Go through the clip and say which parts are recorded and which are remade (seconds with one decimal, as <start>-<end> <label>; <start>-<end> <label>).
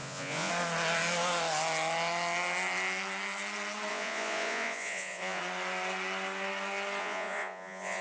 0.0-0.5 remade; 0.5-3.9 recorded; 3.9-5.4 remade; 5.4-7.0 recorded; 7.0-8.0 remade